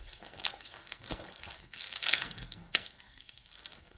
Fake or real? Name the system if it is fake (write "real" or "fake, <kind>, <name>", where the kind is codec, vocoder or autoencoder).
fake, codec, SNAC